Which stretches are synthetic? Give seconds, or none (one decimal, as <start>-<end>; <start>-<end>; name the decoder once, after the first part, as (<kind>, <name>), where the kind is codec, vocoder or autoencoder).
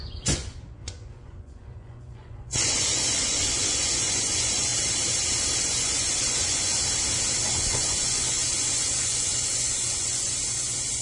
0.0-4.7 (vocoder, Vocos); 5.6-6.7; 7.5-11.0